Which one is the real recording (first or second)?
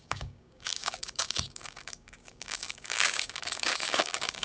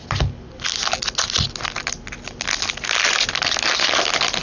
second